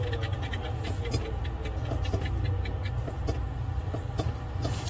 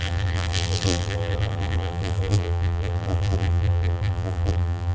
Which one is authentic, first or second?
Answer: first